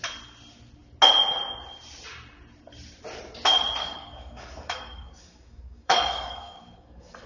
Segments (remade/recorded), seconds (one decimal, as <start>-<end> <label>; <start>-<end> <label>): 0.0-3.8 recorded; 3.8-7.3 remade